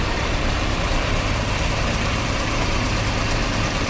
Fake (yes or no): yes